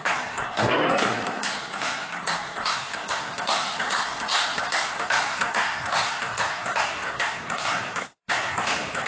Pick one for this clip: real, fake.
fake